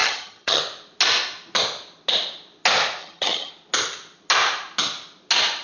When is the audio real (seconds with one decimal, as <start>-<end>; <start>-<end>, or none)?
0.6-3.0; 3.5-5.6